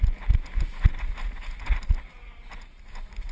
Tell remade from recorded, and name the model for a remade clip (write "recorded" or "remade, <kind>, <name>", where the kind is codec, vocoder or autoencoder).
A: recorded